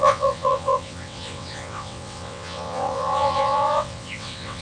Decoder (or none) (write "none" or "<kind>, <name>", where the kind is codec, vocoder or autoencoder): vocoder, WaveNeXt